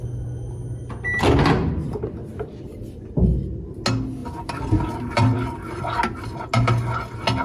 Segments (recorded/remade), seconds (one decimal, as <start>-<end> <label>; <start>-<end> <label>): 0.0-2.2 recorded; 2.2-3.7 remade; 3.7-4.2 recorded; 4.2-5.8 remade; 5.8-7.4 recorded